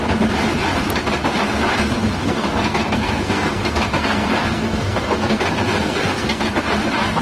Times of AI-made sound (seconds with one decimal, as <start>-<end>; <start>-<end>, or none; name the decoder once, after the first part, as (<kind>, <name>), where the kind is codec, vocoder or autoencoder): 2.2-6.5 (codec, SNAC)